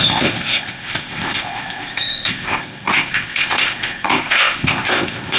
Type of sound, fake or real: fake